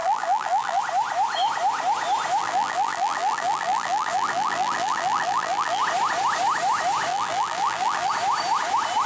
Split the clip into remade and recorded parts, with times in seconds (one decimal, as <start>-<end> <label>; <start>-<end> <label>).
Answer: 0.0-0.8 remade; 0.8-2.4 recorded; 2.4-5.8 remade; 5.8-7.1 recorded; 7.1-8.1 remade; 8.1-9.1 recorded